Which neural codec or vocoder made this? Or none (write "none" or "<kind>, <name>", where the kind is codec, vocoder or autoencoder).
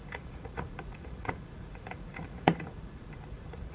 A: vocoder, Vocos